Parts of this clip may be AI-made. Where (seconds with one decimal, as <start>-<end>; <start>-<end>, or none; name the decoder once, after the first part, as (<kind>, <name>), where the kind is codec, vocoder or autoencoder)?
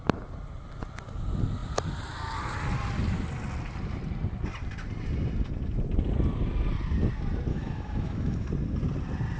7.5-8.5 (autoencoder, DAC-VAE)